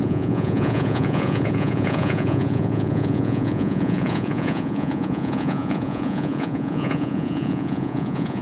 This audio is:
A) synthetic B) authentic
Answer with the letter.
A